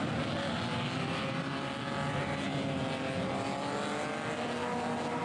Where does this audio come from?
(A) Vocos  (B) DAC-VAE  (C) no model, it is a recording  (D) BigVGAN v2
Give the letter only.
C